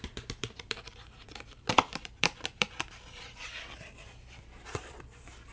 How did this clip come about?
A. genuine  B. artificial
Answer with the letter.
B